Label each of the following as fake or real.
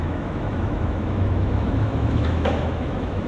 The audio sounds fake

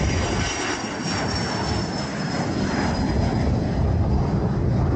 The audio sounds real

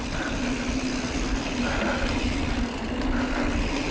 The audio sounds real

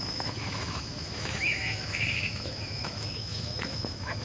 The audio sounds fake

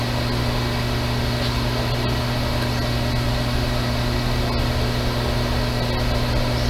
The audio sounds real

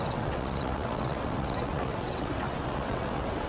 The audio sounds fake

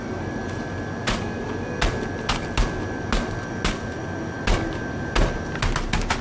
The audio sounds real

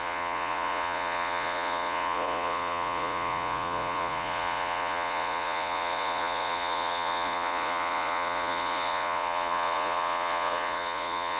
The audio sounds fake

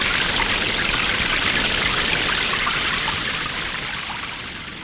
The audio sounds real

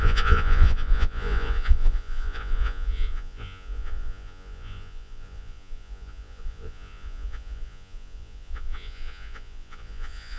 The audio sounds fake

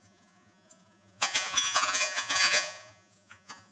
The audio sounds fake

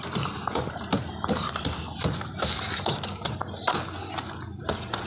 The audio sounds real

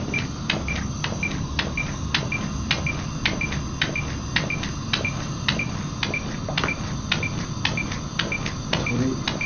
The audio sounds real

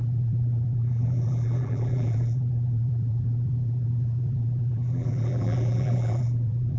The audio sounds fake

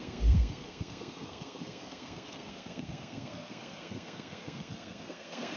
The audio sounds fake